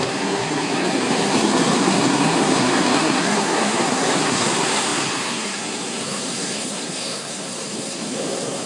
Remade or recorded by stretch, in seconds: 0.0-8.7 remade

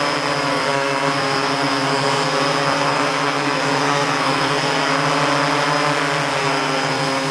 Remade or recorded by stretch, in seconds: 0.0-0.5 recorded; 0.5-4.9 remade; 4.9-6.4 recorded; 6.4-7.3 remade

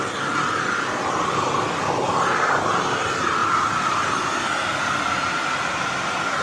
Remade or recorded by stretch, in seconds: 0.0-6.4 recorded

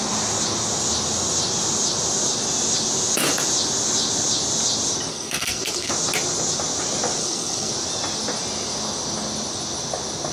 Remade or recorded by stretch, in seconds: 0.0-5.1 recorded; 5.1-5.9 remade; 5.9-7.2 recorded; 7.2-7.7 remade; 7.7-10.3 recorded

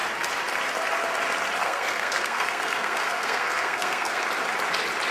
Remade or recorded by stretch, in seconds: 0.0-1.6 recorded; 1.6-4.2 remade; 4.2-5.1 recorded

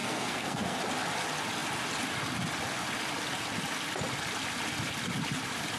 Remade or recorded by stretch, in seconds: 0.0-0.8 remade; 0.8-5.8 recorded

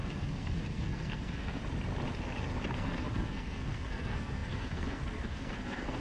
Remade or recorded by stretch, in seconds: 0.0-1.6 remade; 1.6-2.7 recorded; 2.7-6.0 remade